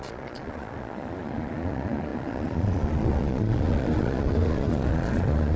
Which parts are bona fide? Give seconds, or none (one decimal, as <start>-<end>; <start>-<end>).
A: none